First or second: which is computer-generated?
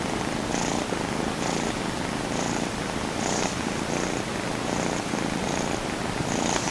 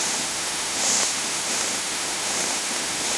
second